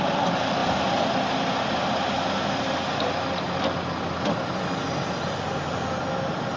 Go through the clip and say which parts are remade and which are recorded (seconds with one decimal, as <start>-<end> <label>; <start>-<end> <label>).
0.0-6.6 recorded